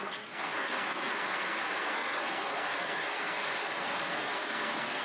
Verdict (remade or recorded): remade